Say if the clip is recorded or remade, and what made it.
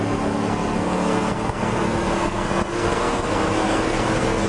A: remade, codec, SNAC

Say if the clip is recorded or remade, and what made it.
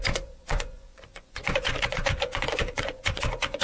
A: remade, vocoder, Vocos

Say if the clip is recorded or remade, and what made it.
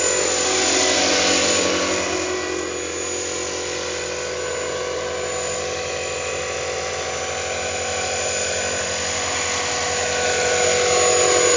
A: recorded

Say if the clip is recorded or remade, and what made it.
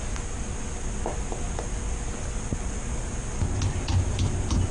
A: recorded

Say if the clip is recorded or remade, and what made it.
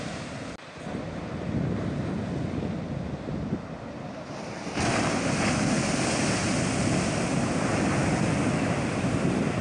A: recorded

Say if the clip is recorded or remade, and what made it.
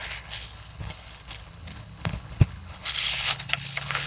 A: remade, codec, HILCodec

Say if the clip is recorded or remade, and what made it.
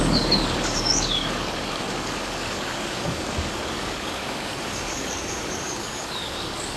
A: remade, codec, DAC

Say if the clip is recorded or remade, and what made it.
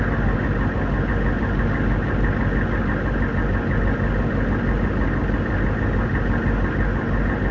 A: recorded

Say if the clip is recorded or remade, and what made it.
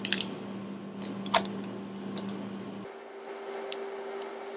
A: recorded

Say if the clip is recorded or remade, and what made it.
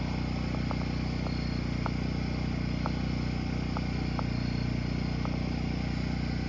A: recorded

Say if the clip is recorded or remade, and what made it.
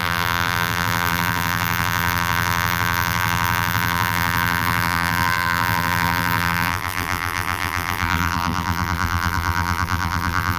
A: remade, vocoder, BigVGAN v2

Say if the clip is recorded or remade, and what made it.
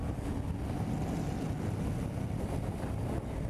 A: recorded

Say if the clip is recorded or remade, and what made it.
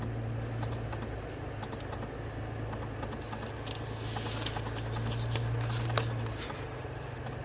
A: recorded